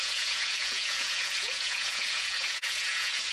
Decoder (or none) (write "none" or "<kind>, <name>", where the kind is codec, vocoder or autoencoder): vocoder, Vocos